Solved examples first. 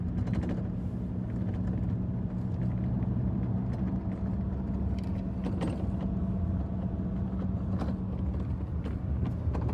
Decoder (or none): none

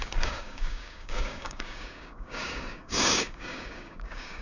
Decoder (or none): codec, DAC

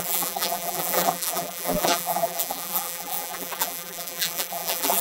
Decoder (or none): vocoder, BigVGAN v2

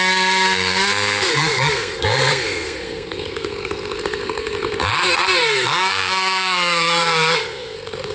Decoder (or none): codec, SNAC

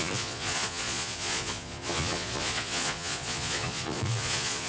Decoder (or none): vocoder, Vocos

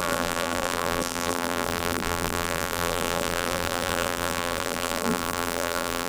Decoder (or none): vocoder, BigVGAN v2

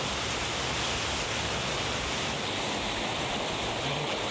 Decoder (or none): none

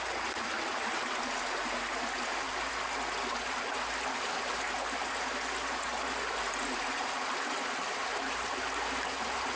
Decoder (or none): none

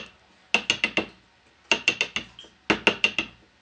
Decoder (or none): none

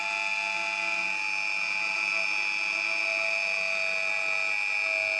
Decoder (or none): none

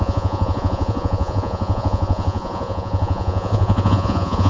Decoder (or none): vocoder, Vocos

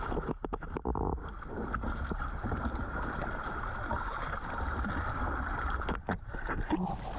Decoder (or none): none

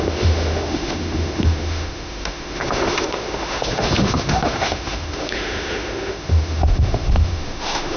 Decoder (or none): autoencoder, DAC-VAE